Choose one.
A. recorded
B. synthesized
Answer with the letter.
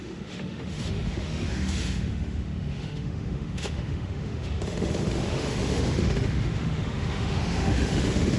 B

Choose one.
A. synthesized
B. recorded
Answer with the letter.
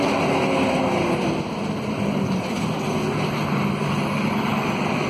B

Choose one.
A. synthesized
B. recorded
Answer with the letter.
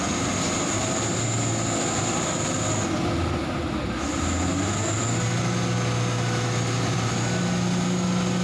B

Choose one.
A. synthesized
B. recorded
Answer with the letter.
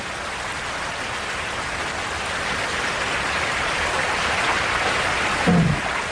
B